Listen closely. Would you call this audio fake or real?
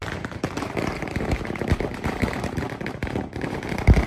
fake